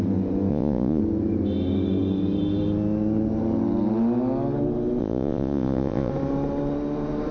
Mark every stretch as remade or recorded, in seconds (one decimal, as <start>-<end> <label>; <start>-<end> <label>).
0.0-0.5 recorded; 0.5-1.0 remade; 1.0-5.0 recorded; 5.0-6.1 remade; 6.1-7.3 recorded